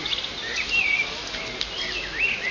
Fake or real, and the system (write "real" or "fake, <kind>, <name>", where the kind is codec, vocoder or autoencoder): real